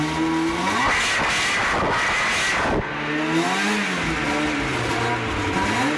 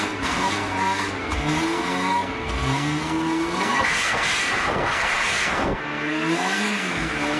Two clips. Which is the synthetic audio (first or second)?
second